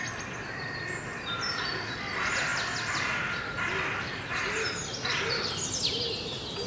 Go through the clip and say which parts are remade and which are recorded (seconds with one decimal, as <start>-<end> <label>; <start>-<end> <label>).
0.0-6.7 recorded